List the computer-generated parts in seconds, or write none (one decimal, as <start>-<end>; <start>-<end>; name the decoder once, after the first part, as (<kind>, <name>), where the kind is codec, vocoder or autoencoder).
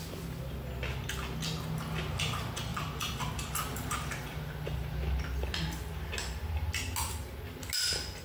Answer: 2.7-4.5 (vocoder, BigVGAN v2)